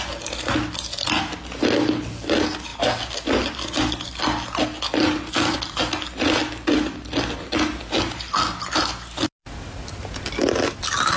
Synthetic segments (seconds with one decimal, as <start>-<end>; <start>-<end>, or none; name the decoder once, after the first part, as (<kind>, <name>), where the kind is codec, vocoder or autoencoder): none